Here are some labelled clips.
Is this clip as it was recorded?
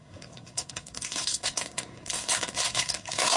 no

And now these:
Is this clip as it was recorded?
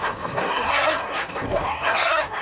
no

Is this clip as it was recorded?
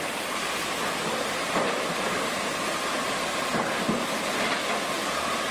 yes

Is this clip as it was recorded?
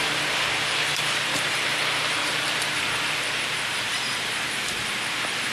no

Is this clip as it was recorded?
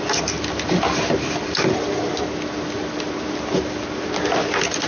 yes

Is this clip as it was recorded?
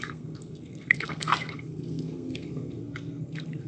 no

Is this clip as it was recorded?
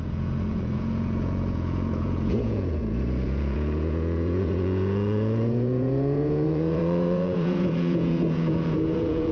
no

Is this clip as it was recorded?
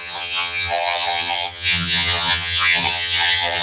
no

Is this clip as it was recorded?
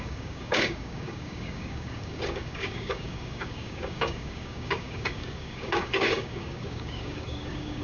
no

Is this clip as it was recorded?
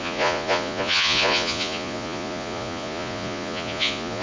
no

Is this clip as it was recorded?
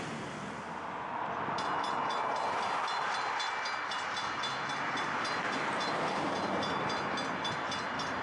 yes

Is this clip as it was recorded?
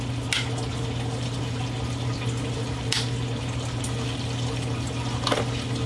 yes